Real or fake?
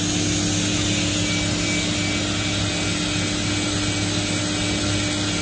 real